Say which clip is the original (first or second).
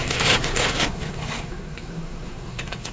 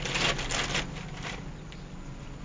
second